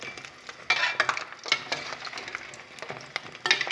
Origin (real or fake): real